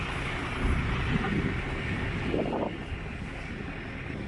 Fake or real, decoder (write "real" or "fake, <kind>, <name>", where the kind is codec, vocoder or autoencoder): real